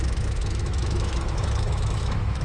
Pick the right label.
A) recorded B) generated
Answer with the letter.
B